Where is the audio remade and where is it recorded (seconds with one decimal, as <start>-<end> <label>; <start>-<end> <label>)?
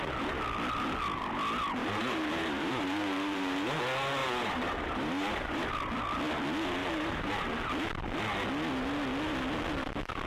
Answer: 0.0-1.8 recorded; 1.8-3.8 remade; 3.8-4.2 recorded; 4.2-5.7 remade; 5.7-6.8 recorded; 6.8-7.3 remade; 7.3-10.3 recorded